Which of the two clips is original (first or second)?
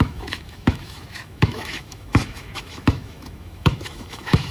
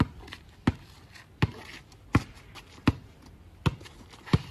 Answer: second